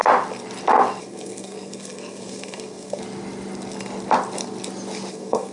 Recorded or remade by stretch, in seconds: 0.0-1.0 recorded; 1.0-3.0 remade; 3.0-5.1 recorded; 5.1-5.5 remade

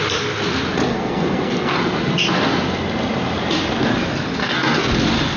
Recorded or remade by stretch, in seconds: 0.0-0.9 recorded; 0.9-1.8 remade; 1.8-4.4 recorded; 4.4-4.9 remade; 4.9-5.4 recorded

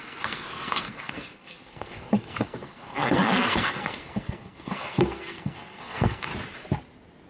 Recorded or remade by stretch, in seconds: 0.0-6.3 remade; 6.3-7.3 recorded

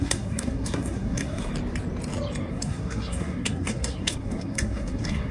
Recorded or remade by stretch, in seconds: 0.0-1.5 remade; 1.5-2.5 recorded; 2.5-5.3 remade